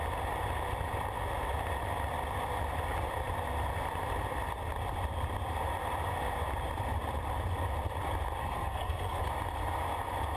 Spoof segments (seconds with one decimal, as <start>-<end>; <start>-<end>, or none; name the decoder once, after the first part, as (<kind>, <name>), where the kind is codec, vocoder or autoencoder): 8.4-9.2 (codec, SNAC)